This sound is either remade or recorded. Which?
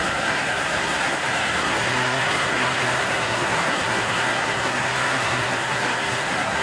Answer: remade